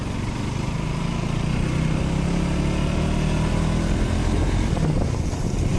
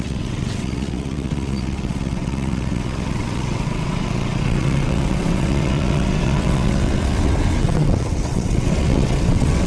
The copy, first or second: second